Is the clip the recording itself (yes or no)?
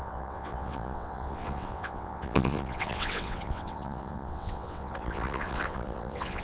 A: no